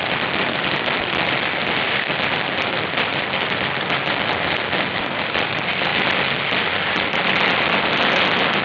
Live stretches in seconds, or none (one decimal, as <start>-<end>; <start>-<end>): 0.0-8.6

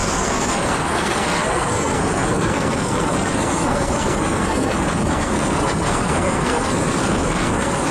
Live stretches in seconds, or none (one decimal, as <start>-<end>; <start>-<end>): none

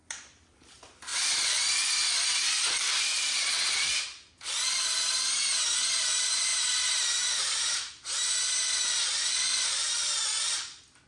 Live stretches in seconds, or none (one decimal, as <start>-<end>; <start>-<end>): 0.0-11.1

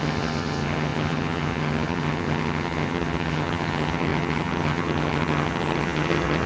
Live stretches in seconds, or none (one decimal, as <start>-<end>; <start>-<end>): none

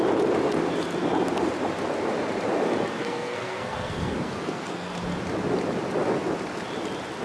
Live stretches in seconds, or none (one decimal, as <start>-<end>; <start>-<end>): 0.0-3.0; 4.9-7.2

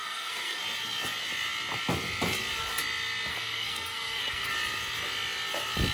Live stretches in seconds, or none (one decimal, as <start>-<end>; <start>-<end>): 0.6-3.3; 4.5-5.9

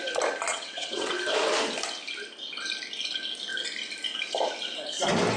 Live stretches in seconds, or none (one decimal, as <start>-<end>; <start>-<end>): 0.0-0.5; 1.1-5.4